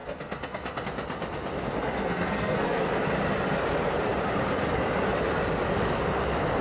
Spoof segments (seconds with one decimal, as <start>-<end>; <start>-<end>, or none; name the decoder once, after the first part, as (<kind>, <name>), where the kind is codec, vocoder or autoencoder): 0.0-0.8 (codec, SNAC); 2.0-2.8